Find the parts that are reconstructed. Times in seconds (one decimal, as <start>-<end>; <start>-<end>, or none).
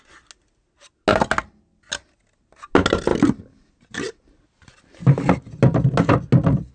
none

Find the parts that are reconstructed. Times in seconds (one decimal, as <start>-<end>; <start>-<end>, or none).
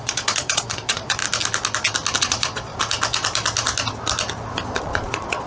0.0-1.2; 2.2-2.7; 4.8-5.5